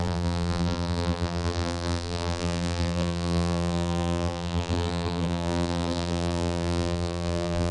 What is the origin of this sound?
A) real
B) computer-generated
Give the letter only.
B